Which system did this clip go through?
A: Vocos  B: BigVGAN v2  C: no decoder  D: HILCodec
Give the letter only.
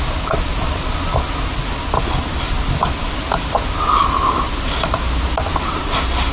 C